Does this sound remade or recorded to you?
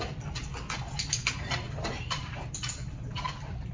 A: recorded